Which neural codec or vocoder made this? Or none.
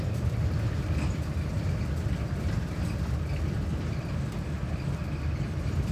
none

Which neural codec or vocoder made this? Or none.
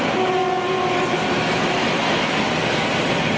none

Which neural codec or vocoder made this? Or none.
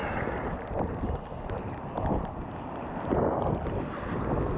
none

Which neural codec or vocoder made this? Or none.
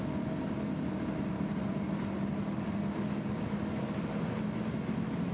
none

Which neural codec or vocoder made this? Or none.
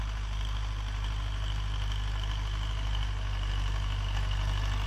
none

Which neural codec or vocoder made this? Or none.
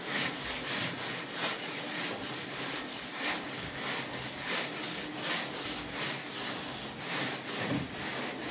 none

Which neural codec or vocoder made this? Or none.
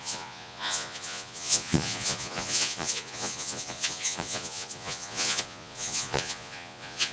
vocoder, Vocos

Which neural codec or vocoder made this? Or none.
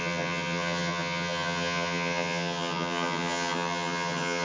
vocoder, HiFi-GAN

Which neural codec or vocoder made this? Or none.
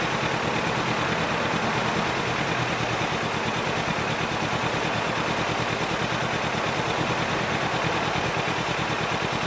none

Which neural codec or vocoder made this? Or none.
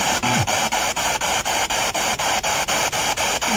vocoder, BigVGAN v2